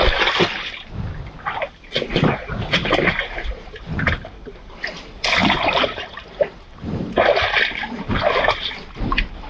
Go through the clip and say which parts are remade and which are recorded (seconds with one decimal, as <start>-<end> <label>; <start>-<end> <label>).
0.0-5.4 recorded; 5.4-7.2 remade; 7.2-9.5 recorded